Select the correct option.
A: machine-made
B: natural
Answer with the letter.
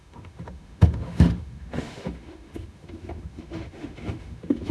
A